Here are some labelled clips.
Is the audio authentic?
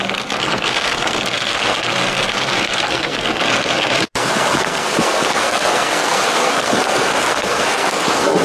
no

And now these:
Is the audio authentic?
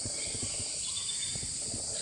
yes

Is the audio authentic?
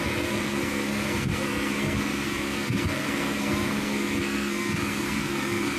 no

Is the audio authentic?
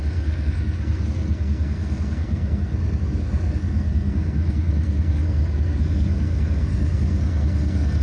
no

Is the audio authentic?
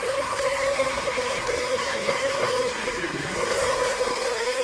no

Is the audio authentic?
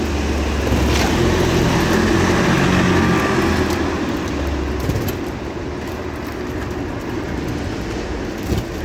yes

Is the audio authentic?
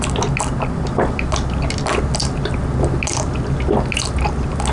yes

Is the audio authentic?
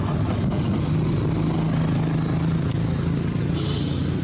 yes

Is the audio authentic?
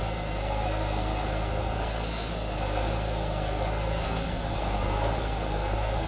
no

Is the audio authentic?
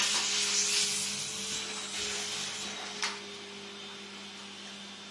yes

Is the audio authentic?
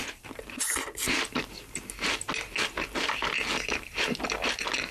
yes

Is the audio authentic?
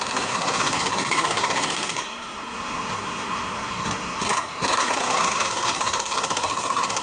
no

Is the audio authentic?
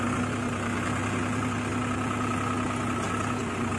yes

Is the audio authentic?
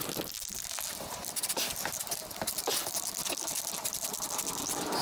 yes